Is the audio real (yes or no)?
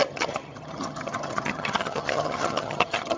no